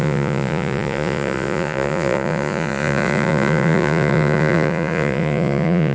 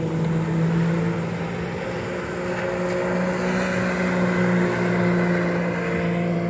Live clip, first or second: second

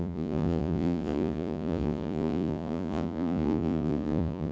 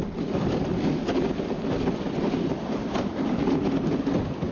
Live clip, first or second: second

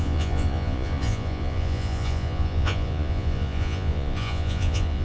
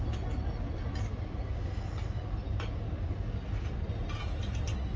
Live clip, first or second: second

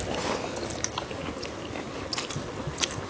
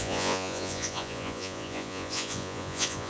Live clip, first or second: first